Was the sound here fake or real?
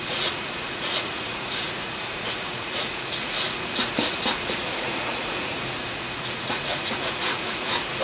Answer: fake